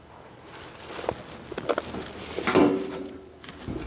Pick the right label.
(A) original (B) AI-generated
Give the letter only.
A